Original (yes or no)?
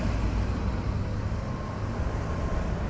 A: yes